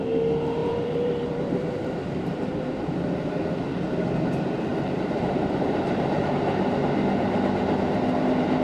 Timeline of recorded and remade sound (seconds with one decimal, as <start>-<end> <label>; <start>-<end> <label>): 0.0-0.6 recorded; 0.6-3.0 remade; 3.0-4.7 recorded; 4.7-6.3 remade; 6.3-8.6 recorded